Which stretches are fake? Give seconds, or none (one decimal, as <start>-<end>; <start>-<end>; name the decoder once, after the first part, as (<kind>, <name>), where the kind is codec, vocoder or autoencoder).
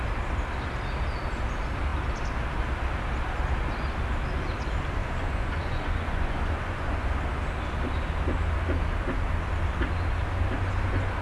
5.0-7.2 (vocoder, Vocos)